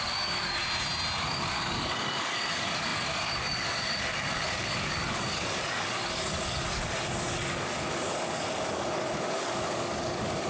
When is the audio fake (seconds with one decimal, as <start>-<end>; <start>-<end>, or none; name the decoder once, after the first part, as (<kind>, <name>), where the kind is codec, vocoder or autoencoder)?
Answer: 0.0-0.6 (codec, DAC); 1.2-10.5